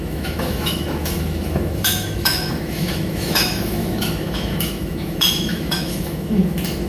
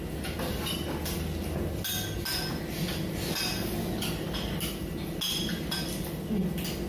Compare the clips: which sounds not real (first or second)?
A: first